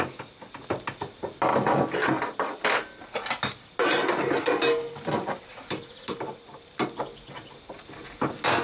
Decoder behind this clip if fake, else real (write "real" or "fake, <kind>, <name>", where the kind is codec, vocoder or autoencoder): real